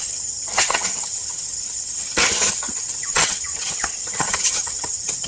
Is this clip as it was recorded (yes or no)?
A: no